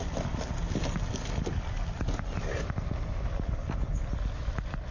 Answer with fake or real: real